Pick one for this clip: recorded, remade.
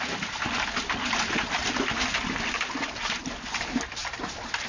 recorded